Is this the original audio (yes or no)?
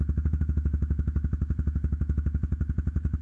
no